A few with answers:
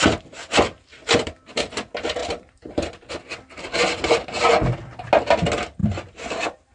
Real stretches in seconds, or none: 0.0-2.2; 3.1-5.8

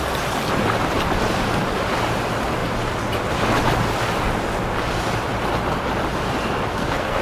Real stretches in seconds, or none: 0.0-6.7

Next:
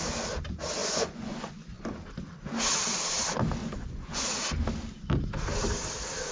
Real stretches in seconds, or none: 0.0-0.8; 1.8-3.6; 4.4-6.3

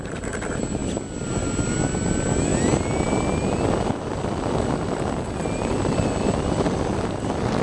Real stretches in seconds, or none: 0.0-7.6